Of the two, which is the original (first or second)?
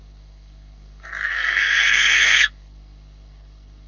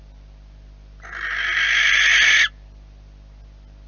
second